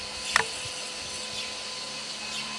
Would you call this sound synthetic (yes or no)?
no